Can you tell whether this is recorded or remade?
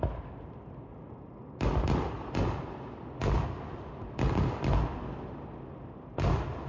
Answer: recorded